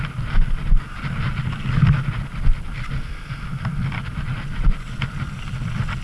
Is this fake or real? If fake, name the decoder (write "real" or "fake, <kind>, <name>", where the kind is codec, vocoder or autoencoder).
real